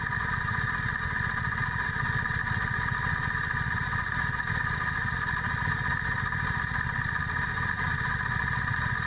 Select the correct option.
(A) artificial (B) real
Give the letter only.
A